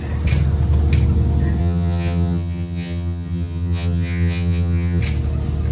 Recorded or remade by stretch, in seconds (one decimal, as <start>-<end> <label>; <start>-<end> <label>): 0.0-1.6 recorded; 1.6-5.0 remade; 5.0-5.7 recorded